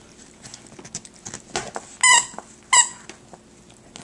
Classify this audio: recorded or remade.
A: recorded